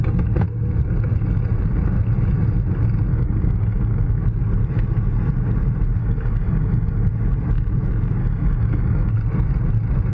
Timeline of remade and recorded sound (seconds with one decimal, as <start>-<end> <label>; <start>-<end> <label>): 0.0-3.1 recorded; 3.1-4.2 remade; 4.2-6.0 recorded; 6.0-7.1 remade; 7.1-8.2 recorded; 8.2-9.1 remade; 9.1-10.1 recorded